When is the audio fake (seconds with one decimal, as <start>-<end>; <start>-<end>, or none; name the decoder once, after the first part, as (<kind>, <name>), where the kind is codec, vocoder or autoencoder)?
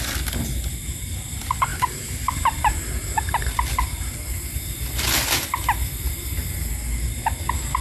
1.7-6.3 (vocoder, BigVGAN v2)